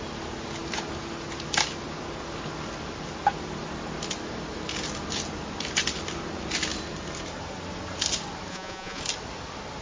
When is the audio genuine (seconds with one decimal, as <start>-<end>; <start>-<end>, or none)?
0.0-8.5; 9.0-9.8